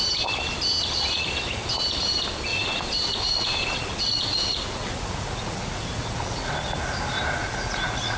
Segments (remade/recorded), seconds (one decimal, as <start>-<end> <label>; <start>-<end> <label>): 0.0-2.5 recorded; 2.5-6.5 remade; 6.5-7.4 recorded; 7.4-8.2 remade